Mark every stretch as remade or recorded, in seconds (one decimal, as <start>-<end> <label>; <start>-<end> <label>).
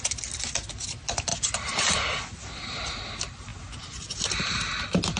0.0-1.3 recorded; 1.3-2.2 remade; 2.2-5.2 recorded